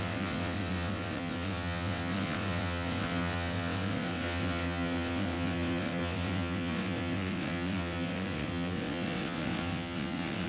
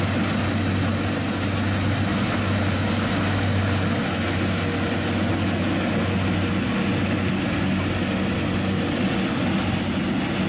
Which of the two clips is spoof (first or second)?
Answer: first